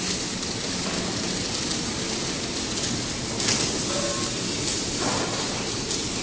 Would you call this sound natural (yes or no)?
yes